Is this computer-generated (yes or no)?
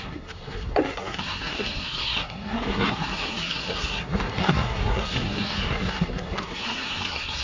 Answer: yes